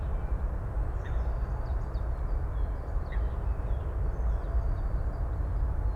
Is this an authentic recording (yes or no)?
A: yes